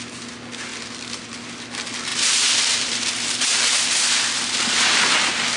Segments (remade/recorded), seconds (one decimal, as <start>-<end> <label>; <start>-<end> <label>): 0.0-0.7 recorded; 0.7-1.3 remade; 1.3-2.1 recorded; 2.1-4.4 remade; 4.4-5.6 recorded